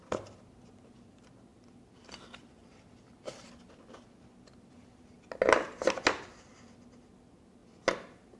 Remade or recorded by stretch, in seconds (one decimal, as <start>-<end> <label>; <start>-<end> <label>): 0.0-1.5 recorded; 1.5-3.7 remade; 3.7-8.4 recorded